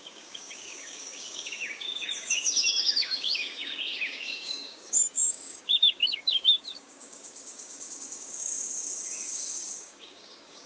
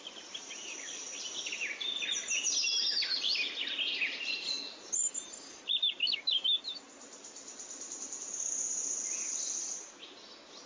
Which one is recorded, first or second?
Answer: second